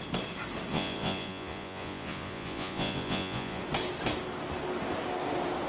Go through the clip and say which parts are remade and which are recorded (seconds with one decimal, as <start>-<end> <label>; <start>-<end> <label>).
0.0-0.7 recorded; 0.7-3.6 remade; 3.6-5.7 recorded